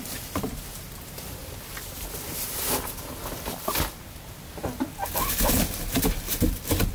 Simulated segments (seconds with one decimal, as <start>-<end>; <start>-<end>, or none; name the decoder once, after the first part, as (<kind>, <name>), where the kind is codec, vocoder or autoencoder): none